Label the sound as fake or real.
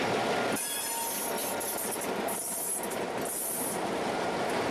real